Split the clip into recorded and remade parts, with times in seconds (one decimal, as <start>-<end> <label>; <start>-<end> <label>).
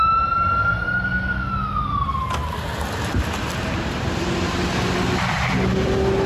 0.0-6.3 recorded